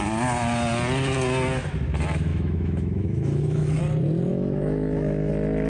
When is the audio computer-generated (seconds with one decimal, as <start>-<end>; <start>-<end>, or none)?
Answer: 2.3-3.8; 4.3-5.3